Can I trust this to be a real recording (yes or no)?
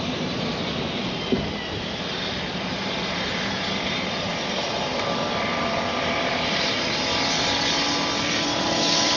yes